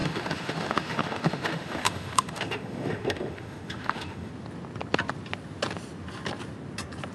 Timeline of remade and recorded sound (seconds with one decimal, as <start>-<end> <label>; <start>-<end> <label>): 0.0-4.3 remade; 4.3-7.1 recorded